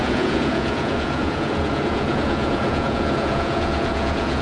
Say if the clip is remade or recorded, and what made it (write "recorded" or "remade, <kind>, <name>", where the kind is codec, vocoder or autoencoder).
remade, vocoder, Vocos